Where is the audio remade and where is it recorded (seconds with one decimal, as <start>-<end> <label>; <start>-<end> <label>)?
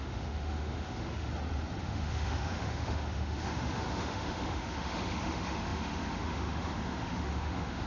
0.0-1.3 remade; 1.3-1.8 recorded; 1.8-7.9 remade